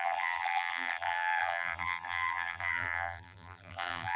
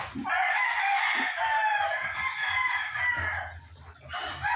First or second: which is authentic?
second